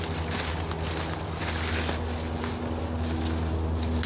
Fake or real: real